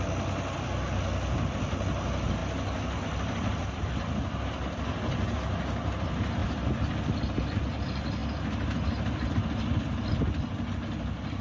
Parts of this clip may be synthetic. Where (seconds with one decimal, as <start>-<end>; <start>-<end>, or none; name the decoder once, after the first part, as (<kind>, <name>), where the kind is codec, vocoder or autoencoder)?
none